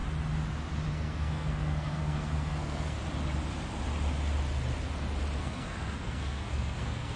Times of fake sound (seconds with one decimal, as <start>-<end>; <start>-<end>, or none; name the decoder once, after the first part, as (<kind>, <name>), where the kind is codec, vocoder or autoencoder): 0.9-3.0 (codec, SNAC); 5.4-7.2